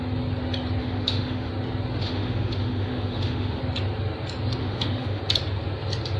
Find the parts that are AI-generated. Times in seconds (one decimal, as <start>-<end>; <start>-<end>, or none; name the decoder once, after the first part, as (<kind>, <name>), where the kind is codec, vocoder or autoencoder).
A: 0.8-1.5 (autoencoder, DAC-VAE); 2.0-3.6; 4.6-5.2